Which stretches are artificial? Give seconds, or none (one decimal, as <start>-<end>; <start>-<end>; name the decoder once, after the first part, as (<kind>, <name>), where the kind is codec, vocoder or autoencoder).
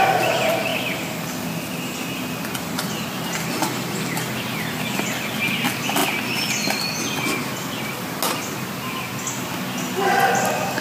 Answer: none